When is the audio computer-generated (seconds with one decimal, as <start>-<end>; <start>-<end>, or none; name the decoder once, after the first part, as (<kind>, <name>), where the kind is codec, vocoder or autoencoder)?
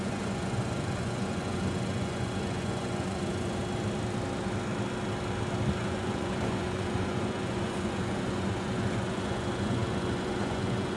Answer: 0.0-3.6 (vocoder, Vocos); 5.8-11.0